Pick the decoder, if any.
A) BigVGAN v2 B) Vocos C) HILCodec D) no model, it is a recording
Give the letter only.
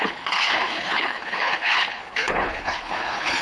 C